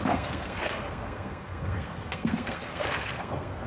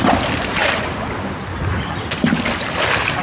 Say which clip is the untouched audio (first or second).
second